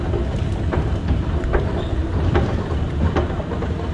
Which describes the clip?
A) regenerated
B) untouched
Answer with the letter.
B